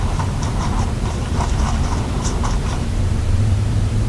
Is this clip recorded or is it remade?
remade